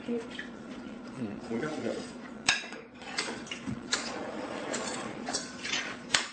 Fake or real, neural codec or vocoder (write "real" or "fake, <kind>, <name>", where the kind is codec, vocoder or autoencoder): fake, vocoder, Vocos